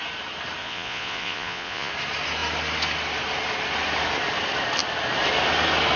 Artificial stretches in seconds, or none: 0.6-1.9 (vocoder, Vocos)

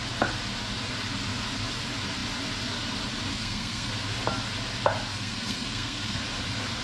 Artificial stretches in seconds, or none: 3.3-3.9 (codec, SNAC); 5.1-6.2

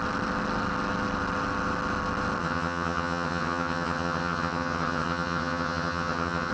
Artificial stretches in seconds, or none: 2.4-6.5 (vocoder, HiFi-GAN)

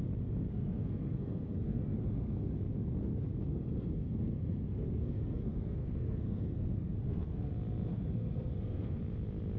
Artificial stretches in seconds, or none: 0.5-2.5 (codec, SNAC); 3.5-7.5; 7.9-9.0

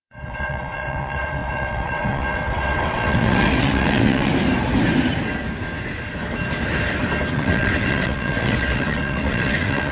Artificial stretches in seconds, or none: 0.0-4.3 (vocoder, WaveNeXt); 7.3-9.9

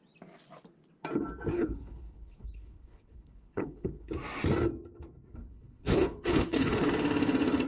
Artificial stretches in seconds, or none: 1.5-4.1 (codec, HILCodec); 5.4-6.9